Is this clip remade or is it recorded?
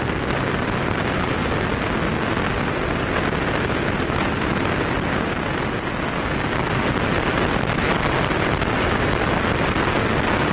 recorded